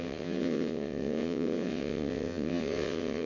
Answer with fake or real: fake